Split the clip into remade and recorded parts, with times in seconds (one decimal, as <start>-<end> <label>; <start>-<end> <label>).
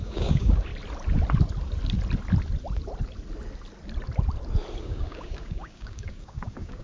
0.0-0.7 remade; 0.7-4.8 recorded; 4.8-6.8 remade